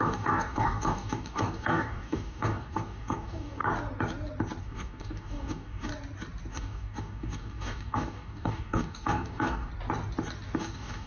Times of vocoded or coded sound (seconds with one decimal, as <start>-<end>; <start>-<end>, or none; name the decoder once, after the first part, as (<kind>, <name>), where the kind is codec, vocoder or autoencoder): 0.0-3.6 (codec, DAC); 4.6-5.9; 6.5-9.7; 10.6-11.1